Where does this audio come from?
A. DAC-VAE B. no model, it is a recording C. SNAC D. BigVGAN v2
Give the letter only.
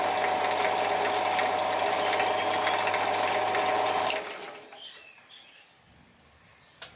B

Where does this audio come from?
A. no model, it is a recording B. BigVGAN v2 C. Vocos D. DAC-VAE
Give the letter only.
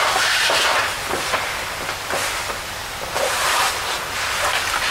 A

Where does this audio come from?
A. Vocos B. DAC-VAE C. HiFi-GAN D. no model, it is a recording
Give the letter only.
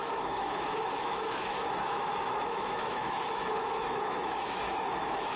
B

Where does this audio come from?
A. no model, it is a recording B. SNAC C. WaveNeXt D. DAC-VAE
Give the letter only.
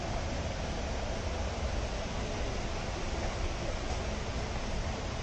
A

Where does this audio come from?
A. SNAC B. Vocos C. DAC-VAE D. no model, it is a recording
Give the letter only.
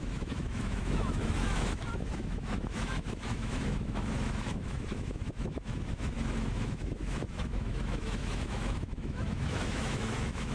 C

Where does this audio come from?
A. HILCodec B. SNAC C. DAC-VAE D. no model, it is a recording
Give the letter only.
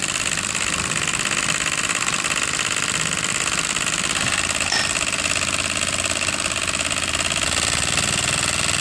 D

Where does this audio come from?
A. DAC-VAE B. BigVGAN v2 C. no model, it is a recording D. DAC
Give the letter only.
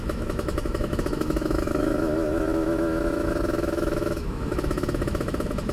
A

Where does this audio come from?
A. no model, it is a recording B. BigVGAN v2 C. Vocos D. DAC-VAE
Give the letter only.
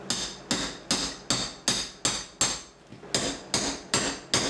A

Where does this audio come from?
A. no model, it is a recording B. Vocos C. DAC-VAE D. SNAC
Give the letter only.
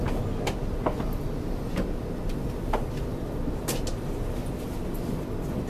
A